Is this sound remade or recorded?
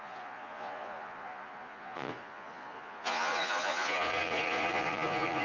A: remade